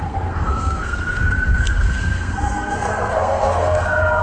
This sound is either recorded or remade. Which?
remade